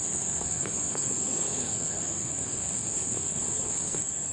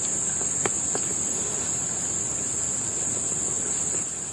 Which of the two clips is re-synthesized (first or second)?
first